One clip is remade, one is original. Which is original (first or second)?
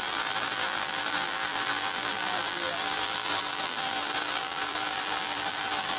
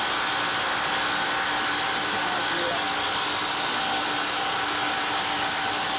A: second